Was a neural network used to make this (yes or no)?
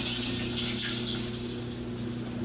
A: no